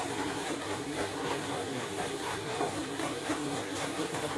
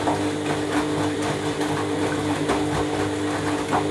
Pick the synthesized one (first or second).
first